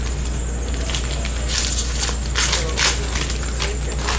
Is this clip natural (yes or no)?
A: yes